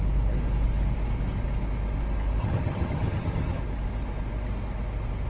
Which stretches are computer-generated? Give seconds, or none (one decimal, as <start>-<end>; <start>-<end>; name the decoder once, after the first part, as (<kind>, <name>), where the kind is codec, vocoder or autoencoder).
2.4-3.6 (vocoder, HiFi-GAN)